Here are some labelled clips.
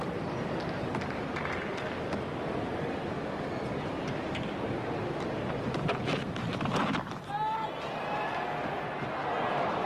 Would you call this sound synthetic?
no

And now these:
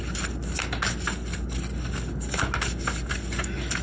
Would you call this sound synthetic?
no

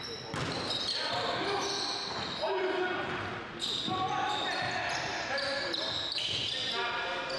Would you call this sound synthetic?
no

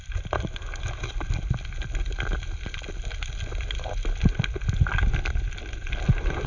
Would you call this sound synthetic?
no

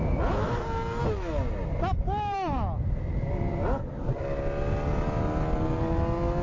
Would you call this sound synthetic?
no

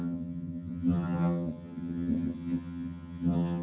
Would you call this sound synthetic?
yes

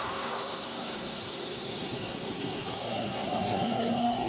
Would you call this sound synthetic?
yes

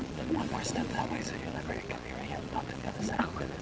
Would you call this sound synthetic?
yes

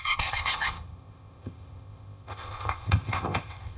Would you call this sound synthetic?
yes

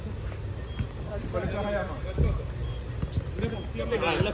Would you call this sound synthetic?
no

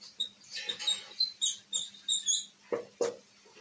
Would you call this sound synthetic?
no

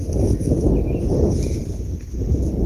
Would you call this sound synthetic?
no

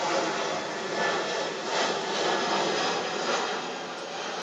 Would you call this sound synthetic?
no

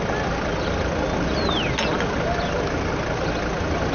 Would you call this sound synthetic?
no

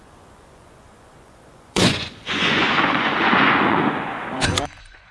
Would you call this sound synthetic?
yes